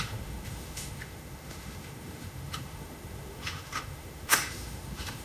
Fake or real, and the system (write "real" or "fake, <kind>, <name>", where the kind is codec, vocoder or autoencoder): fake, autoencoder, DAC-VAE